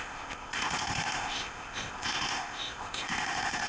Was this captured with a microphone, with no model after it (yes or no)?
no